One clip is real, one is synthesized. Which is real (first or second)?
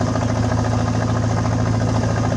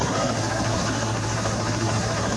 first